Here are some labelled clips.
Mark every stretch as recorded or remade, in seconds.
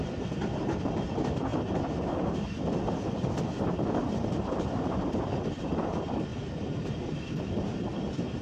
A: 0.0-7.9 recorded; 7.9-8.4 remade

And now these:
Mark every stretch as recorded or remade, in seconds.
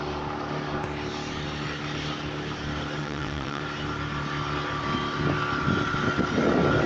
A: 0.0-3.0 recorded; 3.0-3.6 remade; 3.6-6.9 recorded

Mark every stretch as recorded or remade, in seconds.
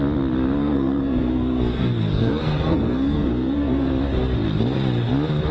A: 0.0-0.6 recorded; 0.6-3.9 remade; 3.9-5.5 recorded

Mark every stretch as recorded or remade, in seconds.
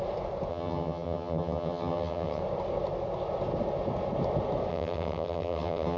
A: 0.0-0.5 recorded; 0.5-2.4 remade; 2.4-4.7 recorded; 4.7-6.0 remade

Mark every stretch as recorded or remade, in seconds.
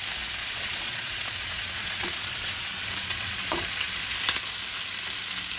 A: 0.0-0.4 recorded; 0.4-3.7 remade; 3.7-5.6 recorded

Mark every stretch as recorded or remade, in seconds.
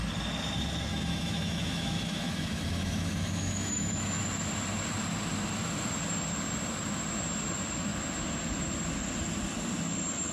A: 0.0-0.9 recorded; 0.9-4.2 remade; 4.2-10.3 recorded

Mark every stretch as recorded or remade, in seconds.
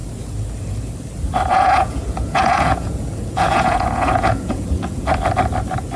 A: 0.0-1.5 recorded; 1.5-5.1 remade; 5.1-6.0 recorded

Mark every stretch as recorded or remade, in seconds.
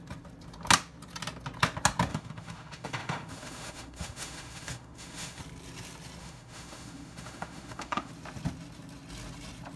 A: 0.0-2.1 recorded; 2.1-5.4 remade; 5.4-6.2 recorded; 6.2-8.1 remade; 8.1-9.8 recorded